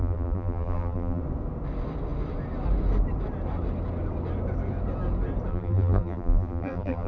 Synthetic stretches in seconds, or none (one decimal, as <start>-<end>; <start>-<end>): 0.0-1.2; 5.5-7.1